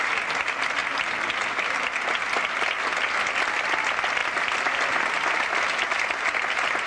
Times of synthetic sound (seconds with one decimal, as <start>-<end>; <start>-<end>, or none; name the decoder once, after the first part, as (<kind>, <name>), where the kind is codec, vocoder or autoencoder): none

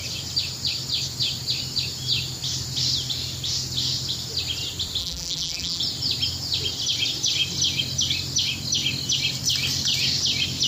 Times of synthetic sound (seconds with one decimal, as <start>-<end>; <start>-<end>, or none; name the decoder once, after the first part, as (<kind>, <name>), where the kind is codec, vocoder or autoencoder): 5.0-5.8 (vocoder, BigVGAN v2)

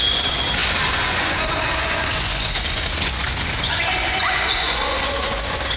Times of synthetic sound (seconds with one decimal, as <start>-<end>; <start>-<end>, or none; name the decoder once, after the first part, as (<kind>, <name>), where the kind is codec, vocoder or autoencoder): 0.0-5.8 (vocoder, Vocos)